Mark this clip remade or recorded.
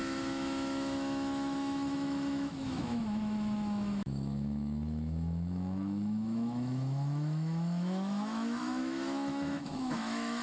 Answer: remade